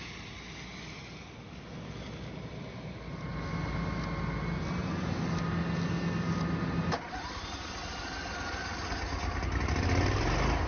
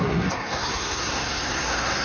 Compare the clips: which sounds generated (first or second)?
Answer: second